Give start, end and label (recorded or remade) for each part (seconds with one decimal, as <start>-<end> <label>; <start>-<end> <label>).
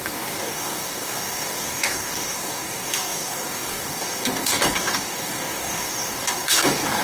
0.0-7.0 remade